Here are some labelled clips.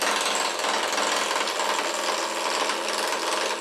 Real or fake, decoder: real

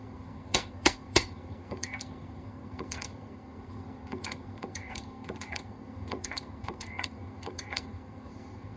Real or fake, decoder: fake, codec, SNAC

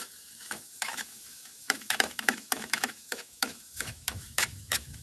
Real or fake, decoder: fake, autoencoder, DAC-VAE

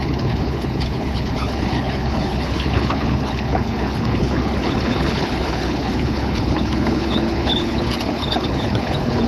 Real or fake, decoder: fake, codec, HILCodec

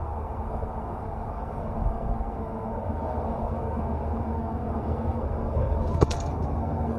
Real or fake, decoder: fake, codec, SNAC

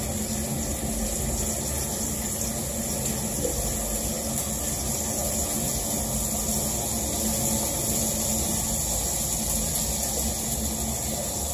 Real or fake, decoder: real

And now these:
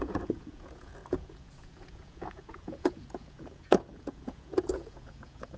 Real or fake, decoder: fake, vocoder, Vocos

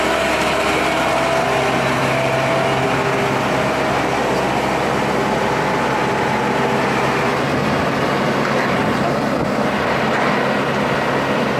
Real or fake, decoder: real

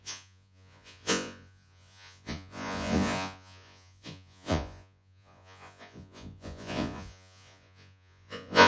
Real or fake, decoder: fake, vocoder, Vocos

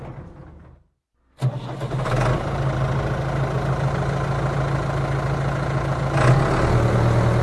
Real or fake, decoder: real